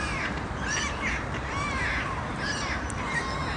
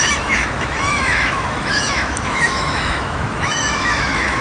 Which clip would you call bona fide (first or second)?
first